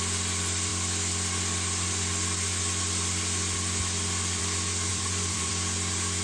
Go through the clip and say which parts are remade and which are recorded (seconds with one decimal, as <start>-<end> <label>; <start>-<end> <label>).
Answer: 0.0-4.9 recorded; 4.9-5.5 remade; 5.5-6.2 recorded